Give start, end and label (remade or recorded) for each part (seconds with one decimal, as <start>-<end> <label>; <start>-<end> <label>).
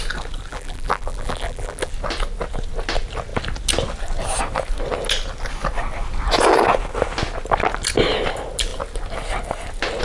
0.0-0.5 recorded; 0.5-1.9 remade; 1.9-10.0 recorded